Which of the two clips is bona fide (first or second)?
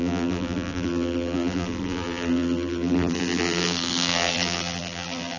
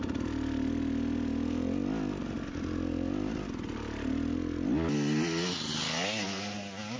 second